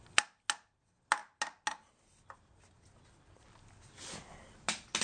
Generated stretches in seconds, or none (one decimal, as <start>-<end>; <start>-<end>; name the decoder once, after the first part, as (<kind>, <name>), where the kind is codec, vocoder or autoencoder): none

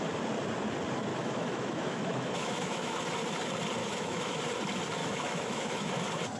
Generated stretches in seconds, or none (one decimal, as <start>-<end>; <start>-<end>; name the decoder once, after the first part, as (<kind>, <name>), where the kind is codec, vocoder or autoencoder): 1.1-3.0 (autoencoder, DAC-VAE); 3.8-4.4; 5.0-5.9

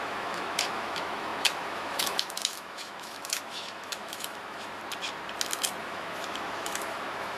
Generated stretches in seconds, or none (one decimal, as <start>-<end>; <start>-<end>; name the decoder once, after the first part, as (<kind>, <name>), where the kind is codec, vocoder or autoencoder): 0.0-4.8 (autoencoder, DAC-VAE); 5.8-7.4